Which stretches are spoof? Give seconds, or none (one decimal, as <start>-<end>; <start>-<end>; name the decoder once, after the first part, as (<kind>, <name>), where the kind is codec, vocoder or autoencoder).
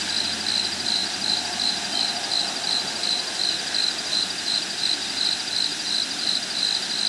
none